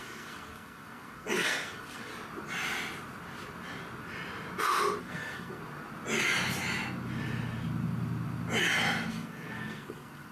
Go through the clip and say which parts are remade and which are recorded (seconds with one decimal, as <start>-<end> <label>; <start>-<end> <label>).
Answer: 0.0-2.1 remade; 2.1-5.0 recorded; 5.0-5.6 remade; 5.6-9.1 recorded; 9.1-10.3 remade